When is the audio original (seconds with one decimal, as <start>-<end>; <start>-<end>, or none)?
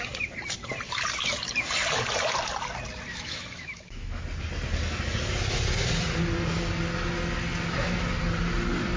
0.0-3.1; 4.2-9.0